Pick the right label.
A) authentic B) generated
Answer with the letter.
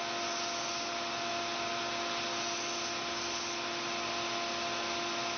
A